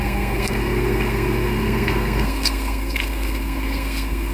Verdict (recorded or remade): remade